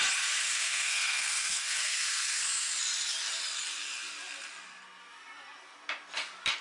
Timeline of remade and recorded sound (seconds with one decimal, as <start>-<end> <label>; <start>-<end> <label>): 0.0-0.4 recorded; 0.4-2.8 remade; 2.8-6.6 recorded